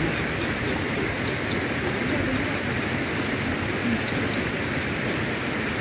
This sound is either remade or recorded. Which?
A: recorded